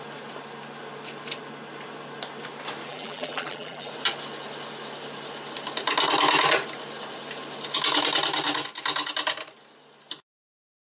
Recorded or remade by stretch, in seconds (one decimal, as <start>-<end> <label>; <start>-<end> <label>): 0.0-2.9 recorded; 2.9-3.9 remade; 3.9-11.0 recorded